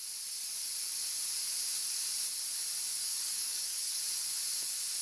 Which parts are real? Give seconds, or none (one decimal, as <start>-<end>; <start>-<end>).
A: 0.0-3.0; 4.0-5.0